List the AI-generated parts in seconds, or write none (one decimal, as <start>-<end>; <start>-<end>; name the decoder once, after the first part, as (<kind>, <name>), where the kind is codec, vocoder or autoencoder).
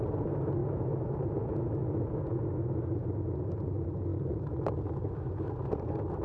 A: none